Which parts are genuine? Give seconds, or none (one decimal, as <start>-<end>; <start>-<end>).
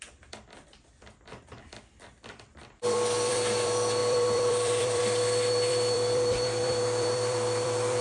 none